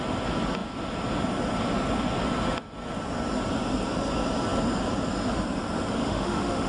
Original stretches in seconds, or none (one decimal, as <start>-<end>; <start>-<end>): 0.0-6.0